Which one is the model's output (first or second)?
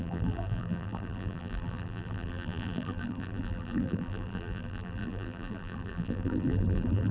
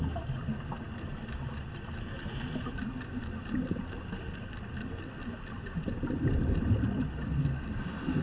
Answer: first